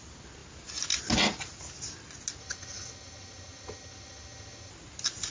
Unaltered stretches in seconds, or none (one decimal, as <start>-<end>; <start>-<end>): 0.0-2.4; 4.7-5.3